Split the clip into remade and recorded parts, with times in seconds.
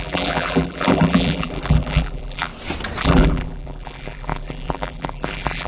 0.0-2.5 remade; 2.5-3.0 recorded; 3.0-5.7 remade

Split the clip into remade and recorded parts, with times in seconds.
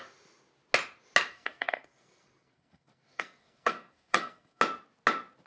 0.0-1.3 recorded; 1.3-4.6 remade; 4.6-5.5 recorded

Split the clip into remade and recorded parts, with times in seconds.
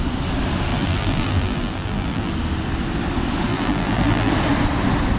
0.0-0.7 recorded; 0.7-2.3 remade; 2.3-3.5 recorded; 3.5-4.3 remade; 4.3-5.2 recorded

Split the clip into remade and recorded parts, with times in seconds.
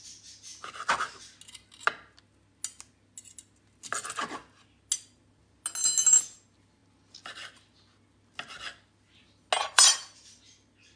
0.0-9.6 recorded; 9.6-10.4 remade; 10.4-11.0 recorded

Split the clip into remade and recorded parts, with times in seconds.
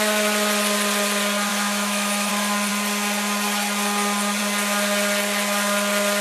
0.0-1.5 recorded; 1.5-2.3 remade; 2.3-6.2 recorded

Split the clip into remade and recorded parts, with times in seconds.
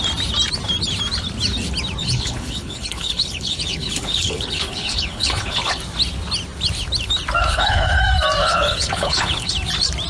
0.0-2.0 recorded; 2.0-5.8 remade; 5.8-7.4 recorded; 7.4-8.0 remade; 8.0-8.4 recorded; 8.4-9.5 remade; 9.5-10.1 recorded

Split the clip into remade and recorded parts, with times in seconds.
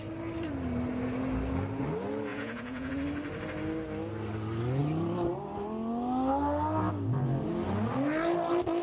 0.0-2.3 recorded; 2.3-2.9 remade; 2.9-8.8 recorded